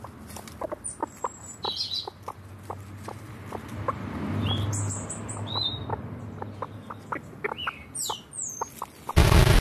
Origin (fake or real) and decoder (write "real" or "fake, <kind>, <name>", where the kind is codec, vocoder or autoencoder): real